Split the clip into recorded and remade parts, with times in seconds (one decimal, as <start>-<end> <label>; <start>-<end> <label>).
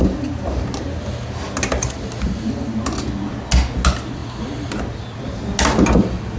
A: 0.0-6.4 recorded